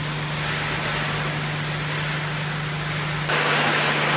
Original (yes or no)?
yes